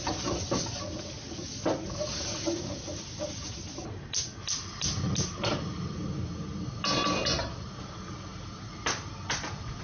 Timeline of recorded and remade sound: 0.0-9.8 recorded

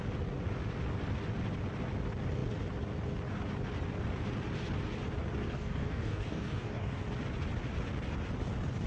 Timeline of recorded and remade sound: 0.0-5.4 recorded; 5.4-7.0 remade; 7.0-8.9 recorded

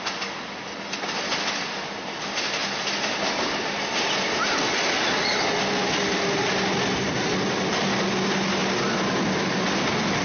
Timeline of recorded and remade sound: 0.0-10.2 recorded